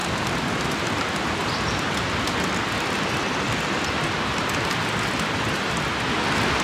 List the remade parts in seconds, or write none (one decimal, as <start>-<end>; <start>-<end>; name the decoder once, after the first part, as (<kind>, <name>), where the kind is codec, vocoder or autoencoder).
none